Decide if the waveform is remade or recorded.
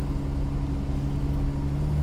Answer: recorded